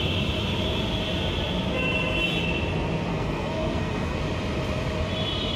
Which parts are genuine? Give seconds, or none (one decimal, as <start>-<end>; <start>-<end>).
0.0-3.1; 4.2-5.6